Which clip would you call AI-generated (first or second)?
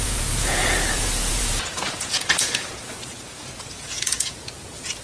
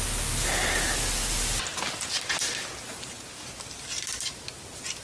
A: first